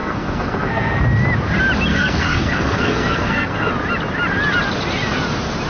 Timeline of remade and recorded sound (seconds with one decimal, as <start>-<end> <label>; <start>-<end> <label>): 0.0-1.0 remade; 1.0-1.9 recorded; 1.9-3.7 remade; 3.7-5.7 recorded